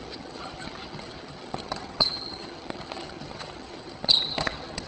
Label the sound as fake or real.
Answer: fake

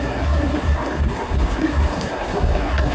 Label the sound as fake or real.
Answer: fake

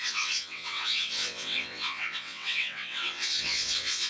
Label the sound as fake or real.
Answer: fake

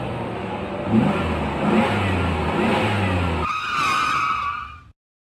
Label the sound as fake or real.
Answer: real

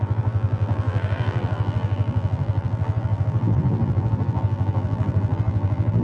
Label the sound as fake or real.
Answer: fake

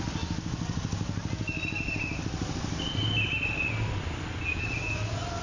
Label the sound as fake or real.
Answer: real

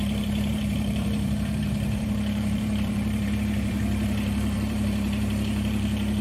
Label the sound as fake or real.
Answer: fake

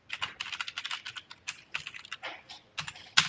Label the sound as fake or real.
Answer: real